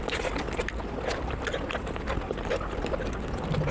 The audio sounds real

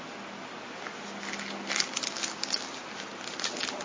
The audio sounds real